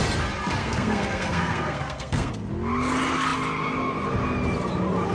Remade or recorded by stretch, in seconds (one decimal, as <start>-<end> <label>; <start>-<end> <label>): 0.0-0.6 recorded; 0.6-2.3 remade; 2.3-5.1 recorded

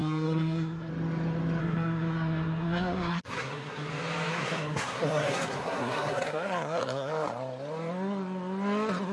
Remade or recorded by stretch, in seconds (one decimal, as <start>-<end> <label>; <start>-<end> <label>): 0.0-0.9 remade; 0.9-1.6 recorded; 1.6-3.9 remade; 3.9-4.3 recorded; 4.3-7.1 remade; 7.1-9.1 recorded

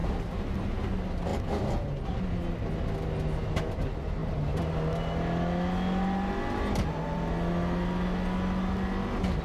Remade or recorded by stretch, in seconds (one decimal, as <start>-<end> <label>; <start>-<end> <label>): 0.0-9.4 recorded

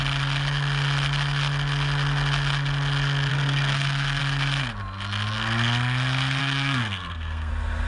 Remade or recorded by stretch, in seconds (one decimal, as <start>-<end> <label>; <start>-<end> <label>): 0.0-3.3 recorded; 3.3-4.2 remade; 4.2-6.4 recorded; 6.4-7.5 remade; 7.5-7.9 recorded

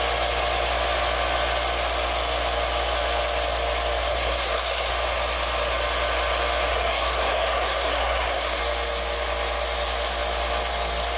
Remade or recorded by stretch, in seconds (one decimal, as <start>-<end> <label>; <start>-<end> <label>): 0.0-4.1 recorded; 4.1-4.9 remade; 4.9-6.7 recorded; 6.7-8.6 remade; 8.6-11.2 recorded